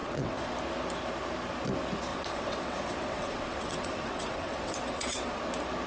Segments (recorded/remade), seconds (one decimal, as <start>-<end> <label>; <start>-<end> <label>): 0.0-0.5 remade; 0.5-2.1 recorded; 2.1-5.4 remade; 5.4-5.9 recorded